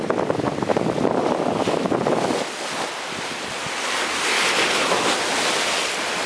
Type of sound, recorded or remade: recorded